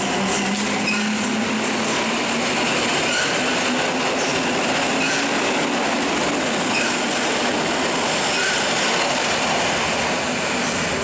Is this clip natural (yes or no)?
yes